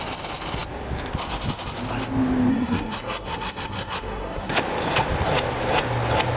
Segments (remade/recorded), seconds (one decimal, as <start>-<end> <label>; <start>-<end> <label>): 0.0-2.5 recorded; 2.5-4.6 remade; 4.6-6.4 recorded